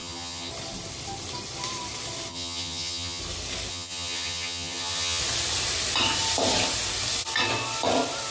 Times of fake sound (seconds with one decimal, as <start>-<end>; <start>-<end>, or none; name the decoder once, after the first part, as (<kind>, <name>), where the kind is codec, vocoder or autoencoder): 0.0-0.5 (vocoder, HiFi-GAN); 2.3-3.2; 3.7-5.2